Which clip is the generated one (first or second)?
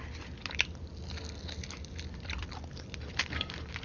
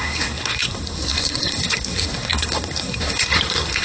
second